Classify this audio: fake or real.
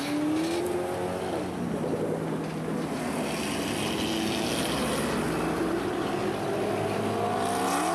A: real